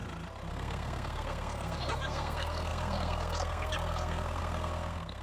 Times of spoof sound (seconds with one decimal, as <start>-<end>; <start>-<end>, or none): 0.5-5.2